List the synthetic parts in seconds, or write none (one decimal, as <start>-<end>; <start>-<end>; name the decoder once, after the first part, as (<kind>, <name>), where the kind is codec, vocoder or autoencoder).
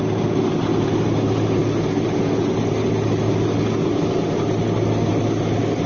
none